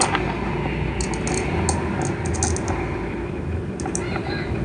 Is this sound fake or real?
real